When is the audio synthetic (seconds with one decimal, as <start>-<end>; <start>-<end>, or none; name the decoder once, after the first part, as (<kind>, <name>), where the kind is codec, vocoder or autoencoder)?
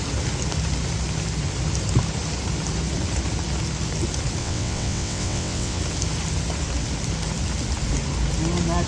4.4-5.8 (vocoder, WaveNeXt)